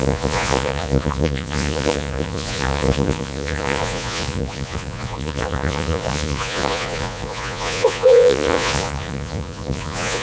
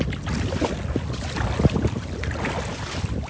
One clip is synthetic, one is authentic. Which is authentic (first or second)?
second